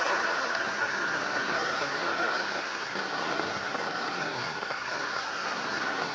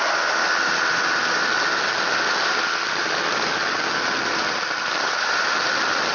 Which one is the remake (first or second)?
first